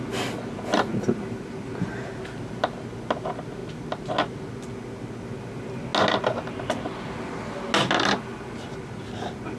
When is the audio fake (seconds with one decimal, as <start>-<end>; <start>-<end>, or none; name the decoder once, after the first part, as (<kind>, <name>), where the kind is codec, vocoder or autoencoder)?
none